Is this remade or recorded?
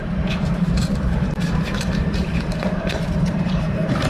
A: remade